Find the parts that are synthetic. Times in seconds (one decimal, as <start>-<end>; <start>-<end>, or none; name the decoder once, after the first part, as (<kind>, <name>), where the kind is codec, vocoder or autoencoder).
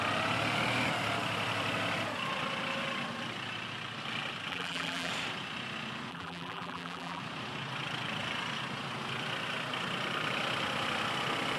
4.5-5.1 (vocoder, BigVGAN v2); 6.1-7.2